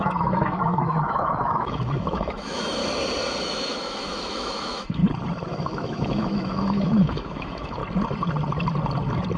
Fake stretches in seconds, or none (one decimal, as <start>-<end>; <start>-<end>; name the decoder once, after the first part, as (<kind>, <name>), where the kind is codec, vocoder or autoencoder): 0.0-2.8 (autoencoder, DAC-VAE); 3.4-5.0; 5.5-7.8